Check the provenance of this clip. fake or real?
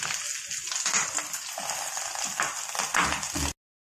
real